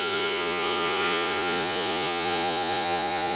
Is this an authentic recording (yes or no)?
no